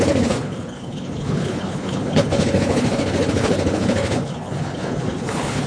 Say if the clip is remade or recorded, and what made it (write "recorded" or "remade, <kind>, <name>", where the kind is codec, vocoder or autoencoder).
remade, codec, HILCodec